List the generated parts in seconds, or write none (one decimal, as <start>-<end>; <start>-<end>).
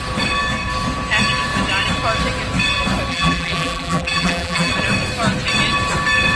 3.1-4.7